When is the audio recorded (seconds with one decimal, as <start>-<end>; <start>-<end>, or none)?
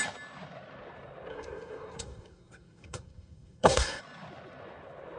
0.0-1.3; 4.0-5.2